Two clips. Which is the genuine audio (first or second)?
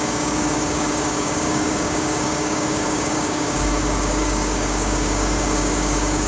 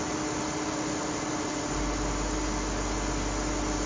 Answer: second